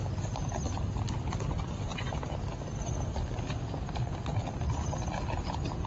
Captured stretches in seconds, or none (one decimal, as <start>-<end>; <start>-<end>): 0.0-5.9

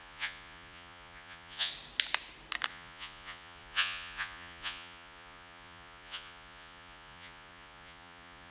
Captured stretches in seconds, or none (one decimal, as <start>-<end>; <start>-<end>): 1.7-2.7